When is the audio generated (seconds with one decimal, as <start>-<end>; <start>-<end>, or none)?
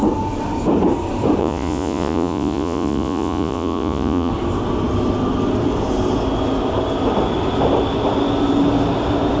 1.4-4.3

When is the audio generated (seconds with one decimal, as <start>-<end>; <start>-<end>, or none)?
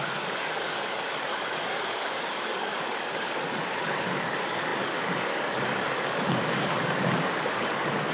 0.0-8.1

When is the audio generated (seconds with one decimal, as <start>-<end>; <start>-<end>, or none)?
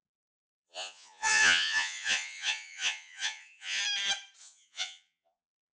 0.4-3.8; 4.4-5.7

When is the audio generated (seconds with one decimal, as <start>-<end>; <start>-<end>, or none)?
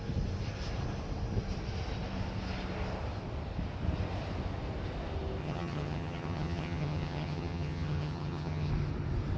5.4-8.7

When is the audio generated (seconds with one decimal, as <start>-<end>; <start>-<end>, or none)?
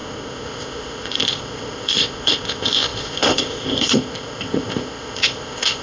0.0-5.8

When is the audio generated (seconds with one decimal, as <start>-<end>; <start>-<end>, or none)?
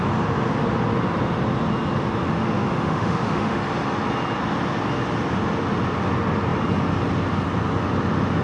2.2-3.6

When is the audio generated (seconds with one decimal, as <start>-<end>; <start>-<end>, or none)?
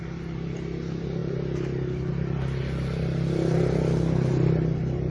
none